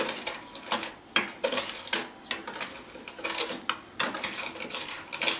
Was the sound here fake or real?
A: real